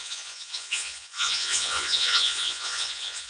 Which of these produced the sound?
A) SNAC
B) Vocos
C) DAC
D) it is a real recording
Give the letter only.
B